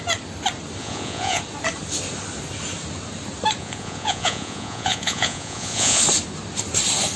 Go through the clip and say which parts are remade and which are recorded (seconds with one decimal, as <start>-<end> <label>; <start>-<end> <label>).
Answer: 0.0-0.8 recorded; 0.8-1.4 remade; 1.4-3.6 recorded; 3.6-6.0 remade; 6.0-7.2 recorded